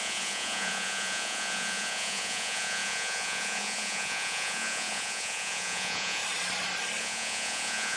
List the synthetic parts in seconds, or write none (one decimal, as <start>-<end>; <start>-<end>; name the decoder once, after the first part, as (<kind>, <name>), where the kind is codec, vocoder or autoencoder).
0.0-6.2 (vocoder, Vocos); 7.0-8.0